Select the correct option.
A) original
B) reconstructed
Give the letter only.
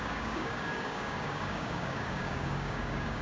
B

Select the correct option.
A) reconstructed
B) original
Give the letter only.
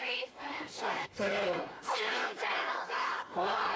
A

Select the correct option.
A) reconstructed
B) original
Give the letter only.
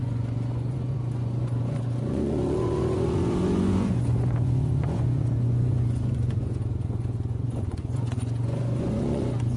A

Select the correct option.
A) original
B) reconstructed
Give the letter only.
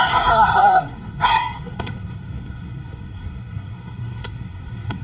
B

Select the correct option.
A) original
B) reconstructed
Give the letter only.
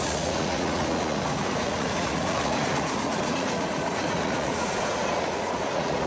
B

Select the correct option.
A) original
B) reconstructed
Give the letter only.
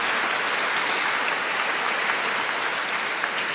A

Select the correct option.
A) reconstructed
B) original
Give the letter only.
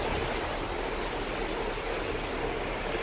B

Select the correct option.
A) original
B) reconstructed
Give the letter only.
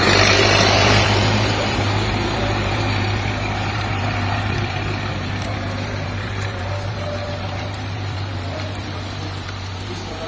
B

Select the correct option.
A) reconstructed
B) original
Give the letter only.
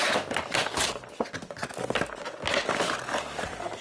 B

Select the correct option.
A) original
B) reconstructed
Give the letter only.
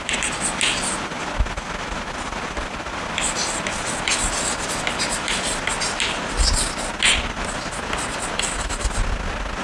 A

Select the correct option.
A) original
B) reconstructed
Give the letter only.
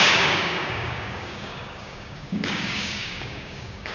B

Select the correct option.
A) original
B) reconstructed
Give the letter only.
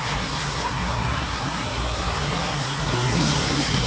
B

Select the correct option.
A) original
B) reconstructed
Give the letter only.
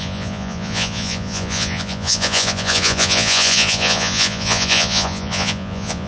B